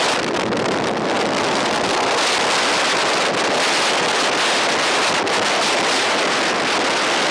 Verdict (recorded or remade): recorded